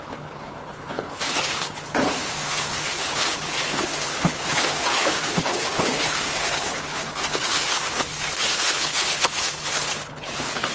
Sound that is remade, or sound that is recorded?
remade